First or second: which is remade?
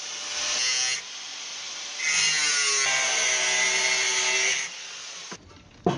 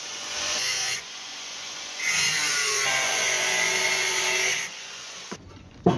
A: second